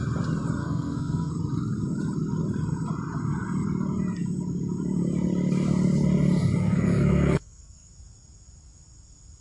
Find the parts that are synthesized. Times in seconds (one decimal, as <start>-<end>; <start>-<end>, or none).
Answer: 0.6-1.3; 6.6-7.9